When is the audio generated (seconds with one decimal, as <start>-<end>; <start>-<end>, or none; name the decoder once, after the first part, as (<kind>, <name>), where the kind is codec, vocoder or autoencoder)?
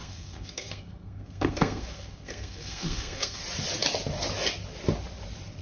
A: 0.0-3.4 (codec, SNAC)